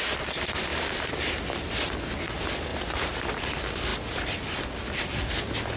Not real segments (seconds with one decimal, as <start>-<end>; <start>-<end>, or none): 2.7-3.3